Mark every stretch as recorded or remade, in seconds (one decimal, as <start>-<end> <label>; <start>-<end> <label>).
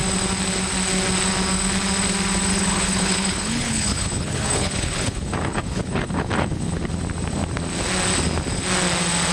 0.0-2.5 recorded; 2.5-6.9 remade; 6.9-9.3 recorded